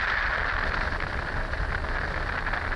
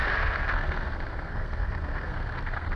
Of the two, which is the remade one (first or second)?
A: second